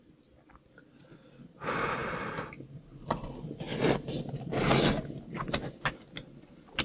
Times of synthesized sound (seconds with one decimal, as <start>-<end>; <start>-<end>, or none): none